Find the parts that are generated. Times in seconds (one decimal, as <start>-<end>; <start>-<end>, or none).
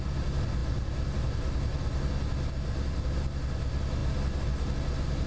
none